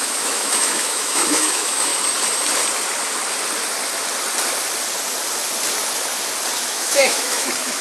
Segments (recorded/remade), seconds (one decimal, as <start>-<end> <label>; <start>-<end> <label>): 0.0-1.9 remade; 1.9-6.6 recorded; 6.6-7.8 remade